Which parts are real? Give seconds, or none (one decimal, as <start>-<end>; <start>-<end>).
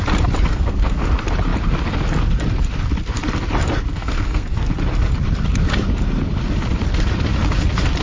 0.0-0.5; 1.0-3.9; 4.7-8.0